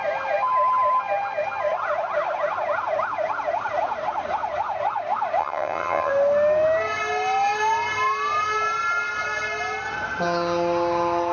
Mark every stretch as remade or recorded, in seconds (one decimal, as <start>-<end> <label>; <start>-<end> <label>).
0.0-5.4 recorded; 5.4-6.1 remade; 6.1-11.3 recorded